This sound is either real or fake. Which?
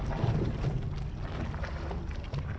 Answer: real